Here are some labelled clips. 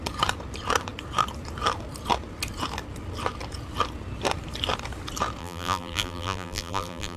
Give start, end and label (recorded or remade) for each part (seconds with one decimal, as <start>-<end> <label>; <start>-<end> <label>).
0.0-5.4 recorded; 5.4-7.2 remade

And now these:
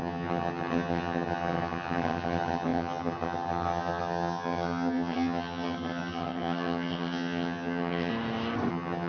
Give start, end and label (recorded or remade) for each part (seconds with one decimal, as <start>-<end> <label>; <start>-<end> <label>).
0.0-8.1 remade; 8.1-8.7 recorded; 8.7-9.1 remade

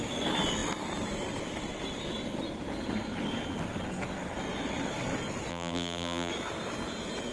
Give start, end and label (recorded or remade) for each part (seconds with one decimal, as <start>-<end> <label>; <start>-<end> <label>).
0.0-5.5 recorded; 5.5-6.3 remade; 6.3-7.3 recorded

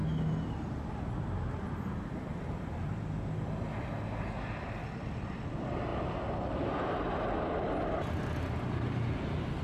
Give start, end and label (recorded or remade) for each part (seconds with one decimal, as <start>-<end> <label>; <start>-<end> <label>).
0.0-9.6 recorded